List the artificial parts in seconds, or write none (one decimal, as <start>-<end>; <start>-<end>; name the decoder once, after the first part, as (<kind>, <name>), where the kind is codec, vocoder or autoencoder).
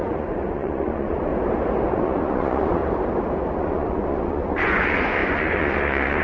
0.0-1.3 (vocoder, Vocos); 1.8-2.8; 3.6-6.2